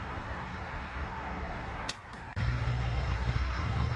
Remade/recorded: remade